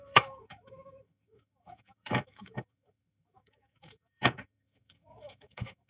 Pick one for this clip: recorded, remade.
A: remade